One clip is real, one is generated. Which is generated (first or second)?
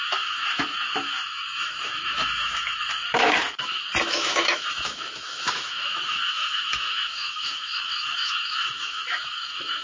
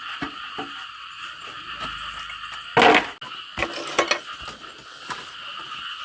first